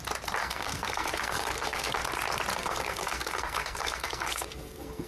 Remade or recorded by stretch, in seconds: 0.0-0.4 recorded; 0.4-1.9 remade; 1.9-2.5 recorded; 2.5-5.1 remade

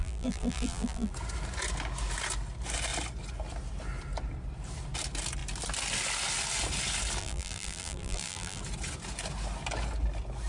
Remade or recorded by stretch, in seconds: 0.0-1.1 remade; 1.1-7.2 recorded; 7.2-8.6 remade; 8.6-10.5 recorded

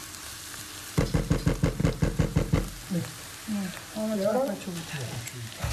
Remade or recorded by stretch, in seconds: 0.0-5.7 recorded

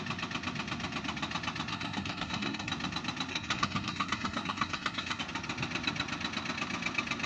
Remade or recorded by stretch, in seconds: 0.0-1.7 recorded; 1.7-2.7 remade; 2.7-3.3 recorded; 3.3-5.2 remade; 5.2-7.3 recorded

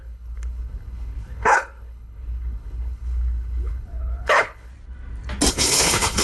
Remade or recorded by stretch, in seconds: 0.0-4.7 remade; 4.7-5.5 recorded; 5.5-6.2 remade

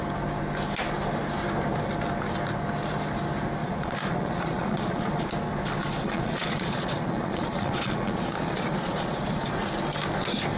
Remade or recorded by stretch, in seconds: 0.0-3.6 recorded; 3.6-5.3 remade; 5.3-5.8 recorded; 5.8-9.5 remade; 9.5-10.6 recorded

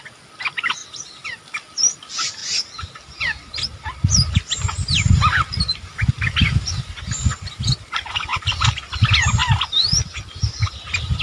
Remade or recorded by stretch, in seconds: 0.0-0.8 remade; 0.8-1.7 recorded; 1.7-2.4 remade; 2.4-4.3 recorded; 4.3-11.2 remade